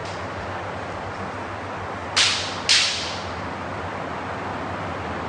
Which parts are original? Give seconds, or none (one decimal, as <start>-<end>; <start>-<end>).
0.0-5.3